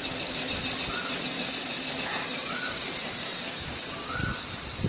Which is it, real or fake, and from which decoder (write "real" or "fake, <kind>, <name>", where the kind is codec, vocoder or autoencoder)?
real